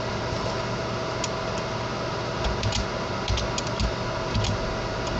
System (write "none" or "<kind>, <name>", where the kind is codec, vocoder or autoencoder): none